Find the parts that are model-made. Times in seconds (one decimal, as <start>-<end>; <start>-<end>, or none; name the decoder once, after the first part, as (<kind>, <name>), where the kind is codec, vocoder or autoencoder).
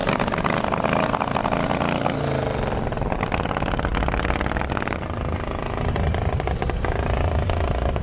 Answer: 0.0-1.4 (vocoder, BigVGAN v2)